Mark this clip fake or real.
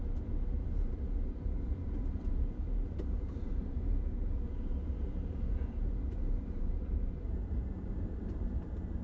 fake